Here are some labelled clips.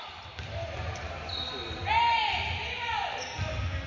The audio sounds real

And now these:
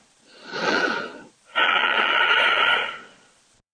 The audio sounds fake